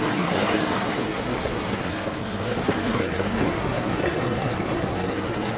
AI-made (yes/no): yes